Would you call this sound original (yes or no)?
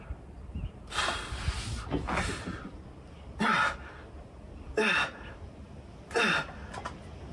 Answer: yes